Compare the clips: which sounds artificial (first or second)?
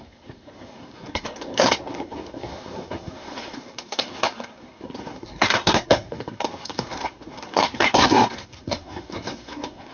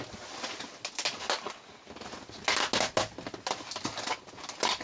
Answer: first